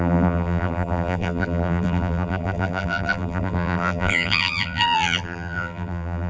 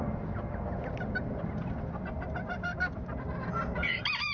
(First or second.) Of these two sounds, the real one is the second